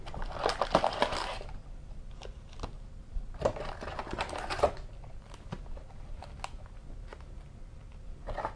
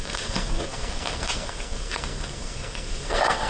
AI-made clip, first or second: second